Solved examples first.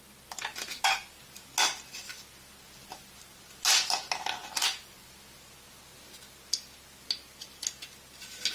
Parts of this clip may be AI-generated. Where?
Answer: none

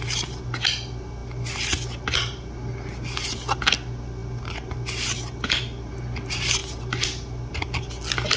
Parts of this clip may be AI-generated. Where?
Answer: none

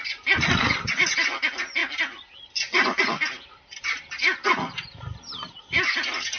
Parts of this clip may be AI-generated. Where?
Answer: none